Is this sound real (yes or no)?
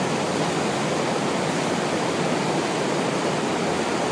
yes